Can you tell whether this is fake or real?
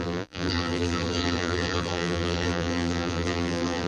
fake